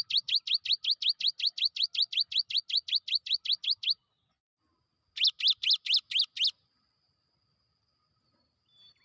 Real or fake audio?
real